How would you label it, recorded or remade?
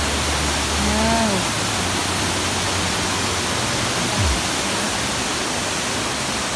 recorded